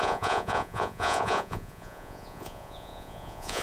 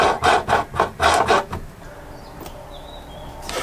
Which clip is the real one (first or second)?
second